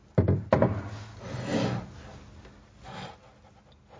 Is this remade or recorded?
recorded